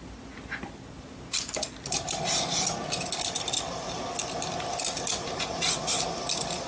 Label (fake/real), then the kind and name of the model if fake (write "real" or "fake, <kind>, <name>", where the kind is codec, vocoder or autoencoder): real